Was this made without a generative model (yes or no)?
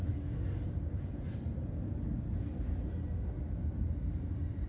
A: yes